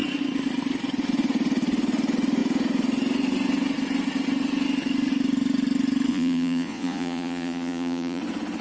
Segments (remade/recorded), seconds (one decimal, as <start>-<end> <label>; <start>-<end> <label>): 0.0-6.1 recorded; 6.1-8.2 remade; 8.2-8.6 recorded